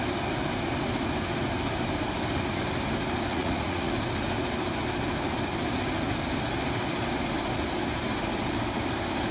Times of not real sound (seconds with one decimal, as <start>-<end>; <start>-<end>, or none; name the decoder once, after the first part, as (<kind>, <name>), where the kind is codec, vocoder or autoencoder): 3.3-3.9 (vocoder, Vocos)